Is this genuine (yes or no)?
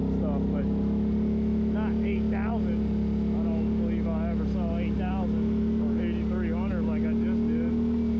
yes